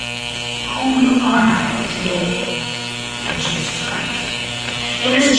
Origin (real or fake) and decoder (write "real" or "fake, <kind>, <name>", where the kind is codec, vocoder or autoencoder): fake, codec, SNAC